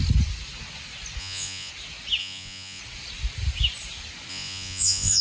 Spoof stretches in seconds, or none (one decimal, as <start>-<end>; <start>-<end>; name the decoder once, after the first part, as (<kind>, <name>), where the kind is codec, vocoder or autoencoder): 1.2-1.7 (vocoder, Vocos); 2.2-2.8; 4.3-5.2